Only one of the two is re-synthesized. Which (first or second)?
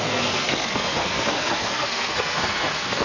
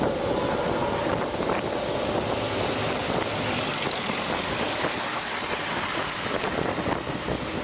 first